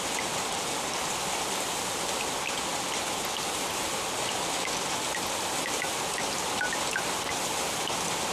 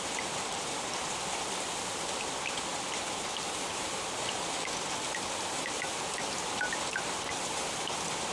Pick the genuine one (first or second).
first